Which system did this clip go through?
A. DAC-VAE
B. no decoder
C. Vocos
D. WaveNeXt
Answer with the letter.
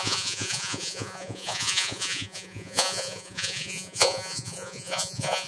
C